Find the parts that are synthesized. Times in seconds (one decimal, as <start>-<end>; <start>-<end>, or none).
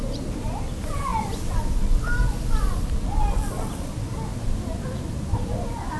0.0-1.1; 4.7-6.0